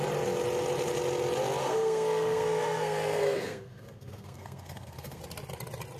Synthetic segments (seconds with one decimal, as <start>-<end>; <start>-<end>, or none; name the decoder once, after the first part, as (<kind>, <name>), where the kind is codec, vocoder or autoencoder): 1.6-5.2 (codec, SNAC)